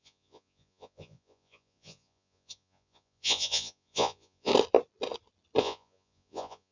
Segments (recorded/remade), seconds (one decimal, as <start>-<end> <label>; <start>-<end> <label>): 0.0-4.5 remade; 4.5-5.6 recorded; 5.6-6.7 remade